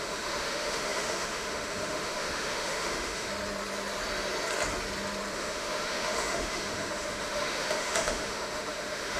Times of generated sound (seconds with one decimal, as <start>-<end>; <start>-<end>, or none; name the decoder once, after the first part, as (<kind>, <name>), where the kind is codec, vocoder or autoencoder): 0.0-3.3 (autoencoder, DAC-VAE); 5.3-9.2